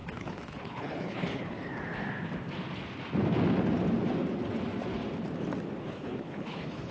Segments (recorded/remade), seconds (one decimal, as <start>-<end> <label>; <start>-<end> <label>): 0.0-1.7 remade; 1.7-5.8 recorded; 5.8-6.9 remade